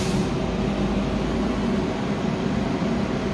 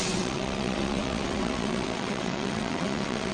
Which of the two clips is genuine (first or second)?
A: first